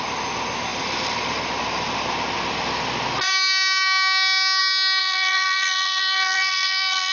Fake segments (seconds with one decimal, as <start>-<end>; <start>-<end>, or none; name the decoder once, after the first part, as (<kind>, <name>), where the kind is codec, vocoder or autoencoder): 5.0-7.1 (vocoder, BigVGAN v2)